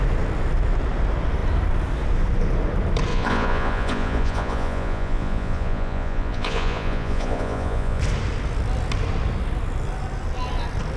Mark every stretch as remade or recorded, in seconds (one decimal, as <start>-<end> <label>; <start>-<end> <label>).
0.0-3.1 recorded; 3.1-8.0 remade; 8.0-11.0 recorded